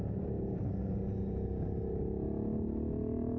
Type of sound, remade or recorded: recorded